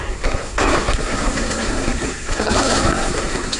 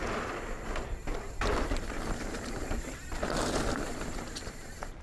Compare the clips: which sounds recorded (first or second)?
second